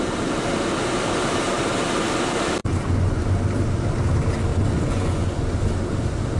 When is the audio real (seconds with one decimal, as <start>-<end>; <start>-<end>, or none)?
0.0-2.6; 3.2-4.5; 5.5-6.4